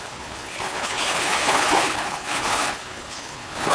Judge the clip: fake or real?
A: fake